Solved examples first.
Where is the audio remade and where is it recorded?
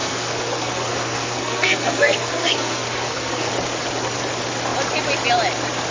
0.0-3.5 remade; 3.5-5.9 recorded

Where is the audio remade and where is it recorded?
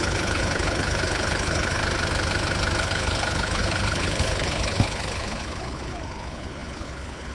0.0-1.8 remade; 1.8-2.8 recorded; 2.8-7.3 remade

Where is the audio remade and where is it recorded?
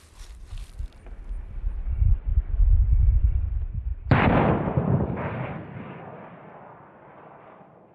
0.0-7.9 recorded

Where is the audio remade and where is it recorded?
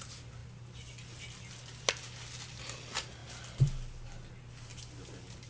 0.0-5.5 recorded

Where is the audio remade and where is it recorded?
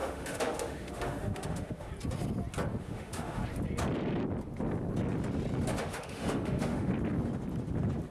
0.0-1.9 remade; 1.9-2.8 recorded; 2.8-3.4 remade; 3.4-5.8 recorded; 5.8-6.9 remade; 6.9-8.1 recorded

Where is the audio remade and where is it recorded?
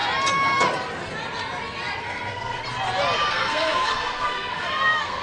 0.0-2.0 recorded; 2.0-2.6 remade; 2.6-3.3 recorded; 3.3-5.2 remade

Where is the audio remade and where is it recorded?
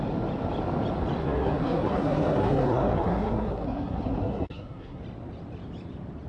0.0-1.2 recorded; 1.2-5.0 remade; 5.0-6.3 recorded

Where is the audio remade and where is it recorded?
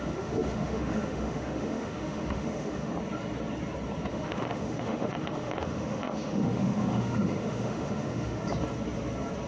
0.0-2.9 remade; 2.9-4.1 recorded; 4.1-8.4 remade; 8.4-9.5 recorded